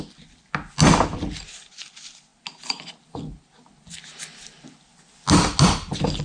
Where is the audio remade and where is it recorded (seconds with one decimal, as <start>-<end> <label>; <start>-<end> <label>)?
0.0-6.2 recorded